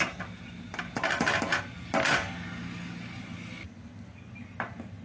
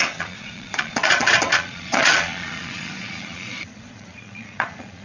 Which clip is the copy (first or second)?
second